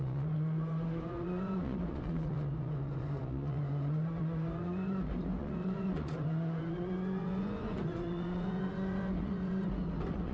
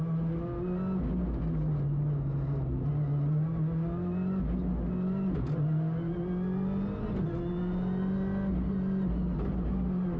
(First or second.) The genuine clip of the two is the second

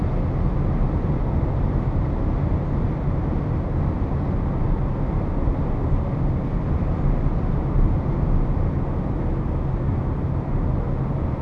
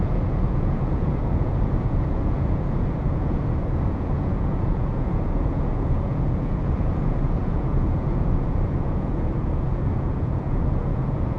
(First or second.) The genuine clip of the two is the first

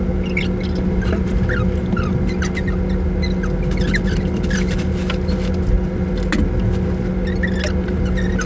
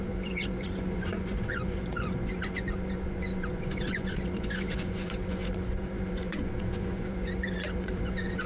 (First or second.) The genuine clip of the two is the first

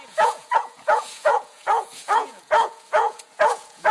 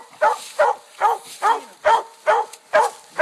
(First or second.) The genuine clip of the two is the second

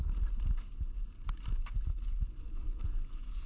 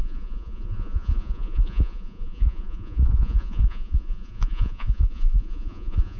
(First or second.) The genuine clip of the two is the first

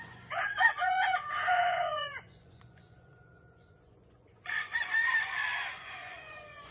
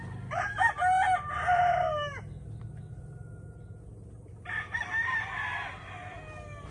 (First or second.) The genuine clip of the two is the second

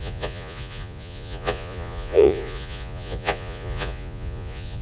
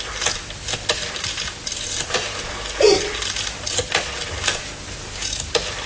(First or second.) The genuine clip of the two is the second